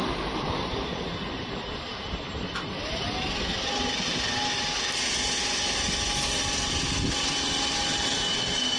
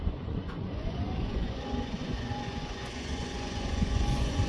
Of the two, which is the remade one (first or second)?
second